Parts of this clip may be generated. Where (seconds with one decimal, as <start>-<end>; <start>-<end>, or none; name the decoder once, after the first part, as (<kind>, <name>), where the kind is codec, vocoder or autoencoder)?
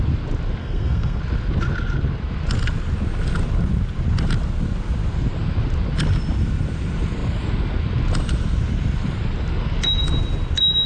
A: 0.6-1.2 (codec, SNAC)